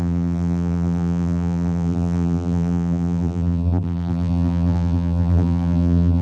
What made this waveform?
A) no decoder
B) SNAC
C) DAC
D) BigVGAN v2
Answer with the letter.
D